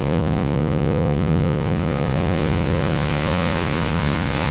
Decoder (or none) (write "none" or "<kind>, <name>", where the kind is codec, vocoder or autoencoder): vocoder, Vocos